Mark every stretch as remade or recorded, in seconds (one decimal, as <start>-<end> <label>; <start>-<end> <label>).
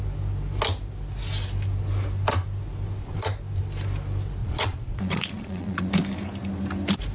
0.0-4.4 recorded; 4.4-5.9 remade; 5.9-7.1 recorded